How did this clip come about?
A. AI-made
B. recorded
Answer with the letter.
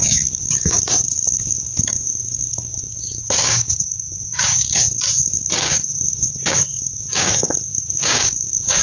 A